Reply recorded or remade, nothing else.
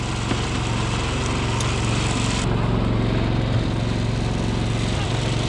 recorded